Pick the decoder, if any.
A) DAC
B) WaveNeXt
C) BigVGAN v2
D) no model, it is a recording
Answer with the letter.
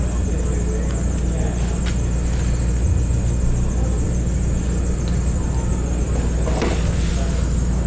D